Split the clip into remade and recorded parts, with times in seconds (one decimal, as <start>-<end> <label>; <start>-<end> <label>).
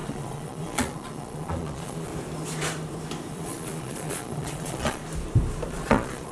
0.0-2.1 remade; 2.1-3.3 recorded; 3.3-5.0 remade; 5.0-5.7 recorded; 5.7-6.3 remade